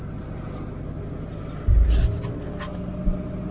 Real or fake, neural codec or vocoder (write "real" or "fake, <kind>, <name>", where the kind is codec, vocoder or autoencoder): real